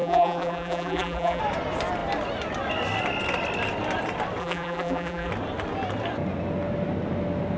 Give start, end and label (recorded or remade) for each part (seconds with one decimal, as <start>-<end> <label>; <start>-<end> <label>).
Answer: 0.0-1.4 remade; 1.4-4.4 recorded; 4.4-5.3 remade; 5.3-7.6 recorded